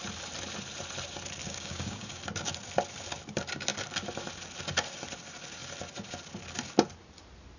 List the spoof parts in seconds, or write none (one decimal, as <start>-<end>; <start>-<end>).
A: 1.4-2.2